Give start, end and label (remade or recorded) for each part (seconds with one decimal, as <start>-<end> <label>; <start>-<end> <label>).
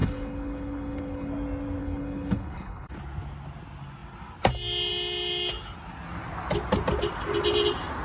0.0-1.3 remade; 1.3-1.8 recorded; 1.8-2.9 remade; 2.9-8.0 recorded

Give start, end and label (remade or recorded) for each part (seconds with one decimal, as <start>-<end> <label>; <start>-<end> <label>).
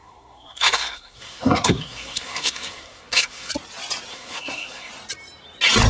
0.0-3.5 remade; 3.5-4.1 recorded; 4.1-4.9 remade; 4.9-5.9 recorded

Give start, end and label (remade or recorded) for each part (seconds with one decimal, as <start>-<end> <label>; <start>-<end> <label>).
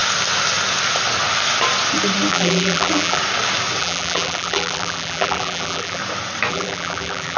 0.0-2.3 recorded; 2.3-3.2 remade; 3.2-3.8 recorded; 3.8-6.0 remade; 6.0-6.5 recorded; 6.5-7.4 remade